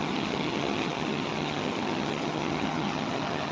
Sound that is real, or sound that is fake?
fake